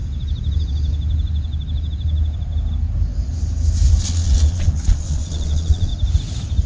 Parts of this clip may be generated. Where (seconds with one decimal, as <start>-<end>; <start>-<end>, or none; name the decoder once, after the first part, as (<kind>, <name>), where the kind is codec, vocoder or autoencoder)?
4.0-5.9 (vocoder, Vocos)

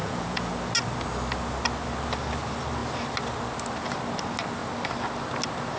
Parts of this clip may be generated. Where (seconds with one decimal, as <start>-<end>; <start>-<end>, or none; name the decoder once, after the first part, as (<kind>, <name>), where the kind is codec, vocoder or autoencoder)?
0.0-0.5 (vocoder, Vocos)